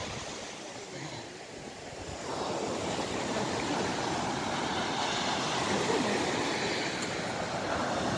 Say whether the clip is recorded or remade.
recorded